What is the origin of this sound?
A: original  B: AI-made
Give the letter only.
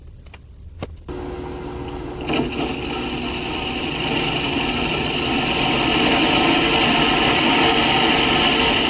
A